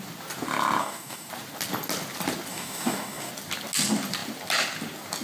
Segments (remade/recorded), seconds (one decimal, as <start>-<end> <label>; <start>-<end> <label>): 0.0-0.8 recorded; 0.8-1.3 remade; 1.3-2.5 recorded; 2.5-3.3 remade; 3.3-5.2 recorded

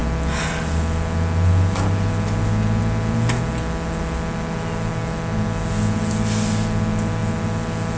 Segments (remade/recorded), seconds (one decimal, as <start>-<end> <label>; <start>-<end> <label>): 0.0-8.0 recorded